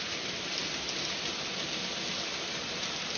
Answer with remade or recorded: recorded